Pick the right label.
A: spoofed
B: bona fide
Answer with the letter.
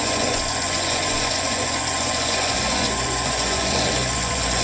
A